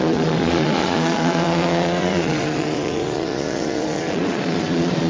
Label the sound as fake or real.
fake